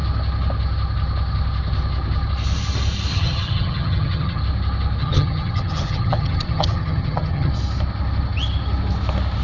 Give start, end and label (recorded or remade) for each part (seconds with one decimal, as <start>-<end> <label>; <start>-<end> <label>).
0.0-3.1 recorded; 3.1-4.4 remade; 4.4-5.0 recorded; 5.0-7.5 remade; 7.5-9.4 recorded